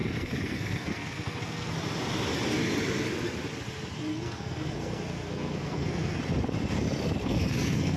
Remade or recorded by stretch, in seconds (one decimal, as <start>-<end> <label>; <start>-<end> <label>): 0.0-1.7 remade; 1.7-4.1 recorded; 4.1-6.2 remade; 6.2-7.2 recorded; 7.2-8.0 remade